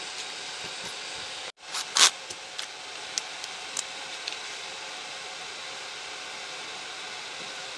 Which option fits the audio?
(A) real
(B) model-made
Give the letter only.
A